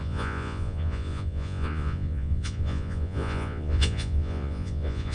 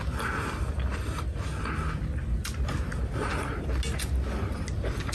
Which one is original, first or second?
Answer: second